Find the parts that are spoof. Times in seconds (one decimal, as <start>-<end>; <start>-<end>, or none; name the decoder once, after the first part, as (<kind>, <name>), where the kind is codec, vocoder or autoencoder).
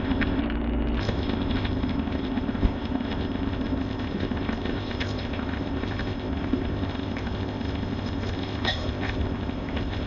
0.0-0.4 (codec, ZipCodec); 1.0-10.1